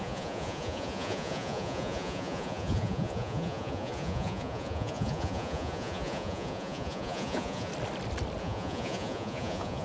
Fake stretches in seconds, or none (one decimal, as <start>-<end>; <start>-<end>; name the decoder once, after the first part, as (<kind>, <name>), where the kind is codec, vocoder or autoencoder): 0.0-7.7 (vocoder, Vocos); 8.4-9.8